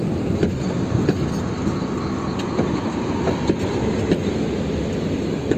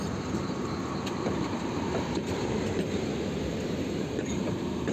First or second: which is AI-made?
second